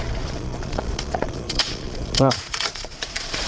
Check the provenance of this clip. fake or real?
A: fake